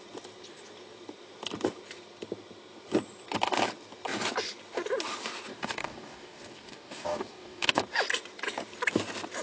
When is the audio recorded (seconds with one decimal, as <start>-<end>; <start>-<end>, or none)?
0.0-5.5; 7.8-9.4